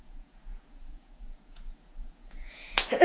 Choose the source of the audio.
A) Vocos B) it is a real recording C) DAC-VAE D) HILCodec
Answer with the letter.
A